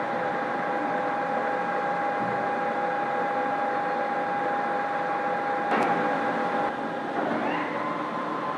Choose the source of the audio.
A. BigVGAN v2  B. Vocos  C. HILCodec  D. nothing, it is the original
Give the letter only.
D